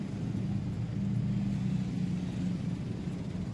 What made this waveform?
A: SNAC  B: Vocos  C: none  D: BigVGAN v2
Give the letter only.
C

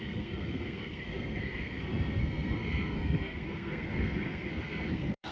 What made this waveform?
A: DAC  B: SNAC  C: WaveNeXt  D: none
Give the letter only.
B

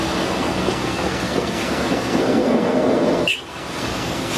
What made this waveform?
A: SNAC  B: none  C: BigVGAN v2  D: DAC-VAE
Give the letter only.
A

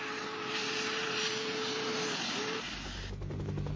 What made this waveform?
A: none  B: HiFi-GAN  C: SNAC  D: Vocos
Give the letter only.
A